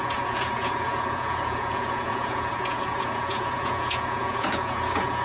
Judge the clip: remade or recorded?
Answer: remade